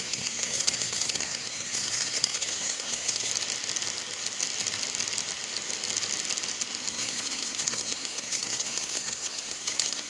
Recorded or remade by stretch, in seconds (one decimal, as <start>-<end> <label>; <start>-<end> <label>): 0.0-3.3 remade; 3.3-6.9 recorded; 6.9-10.1 remade